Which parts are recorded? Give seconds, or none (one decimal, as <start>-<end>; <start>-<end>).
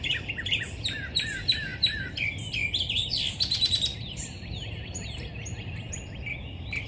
0.0-6.9